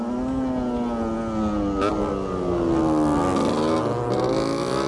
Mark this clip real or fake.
real